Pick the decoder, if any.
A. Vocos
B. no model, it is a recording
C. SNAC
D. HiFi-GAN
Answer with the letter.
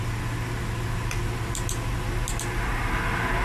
B